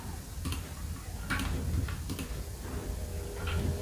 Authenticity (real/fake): fake